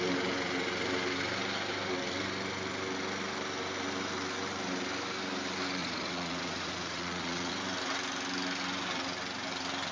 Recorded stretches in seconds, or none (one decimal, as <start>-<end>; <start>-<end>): 0.0-5.8; 7.5-9.9

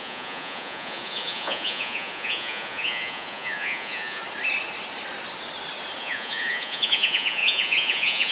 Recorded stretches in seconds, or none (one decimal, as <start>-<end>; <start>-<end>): 4.2-6.0

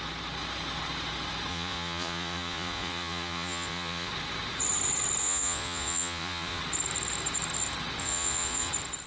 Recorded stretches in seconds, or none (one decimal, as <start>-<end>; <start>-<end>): 0.0-1.5; 4.1-5.2; 6.6-8.0; 8.7-9.1

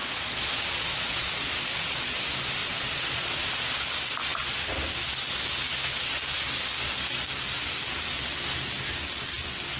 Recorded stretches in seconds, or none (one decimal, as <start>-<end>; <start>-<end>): 2.0-2.6; 3.5-9.8

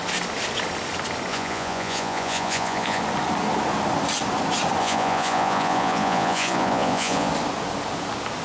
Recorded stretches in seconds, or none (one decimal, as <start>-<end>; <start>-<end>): 0.0-1.3; 3.0-4.8; 7.3-8.4